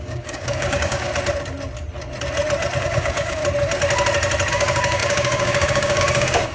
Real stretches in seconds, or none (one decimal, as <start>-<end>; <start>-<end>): 1.1-2.8; 3.4-4.5